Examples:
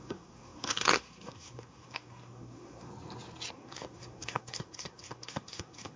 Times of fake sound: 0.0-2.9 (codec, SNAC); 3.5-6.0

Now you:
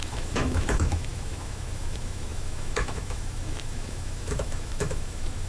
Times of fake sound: 0.0-5.5 (autoencoder, DAC-VAE)

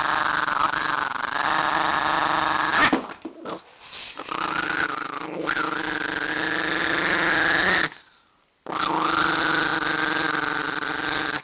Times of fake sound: none

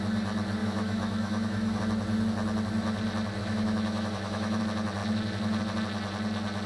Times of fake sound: 0.6-1.8 (autoencoder, DAC-VAE); 3.4-4.6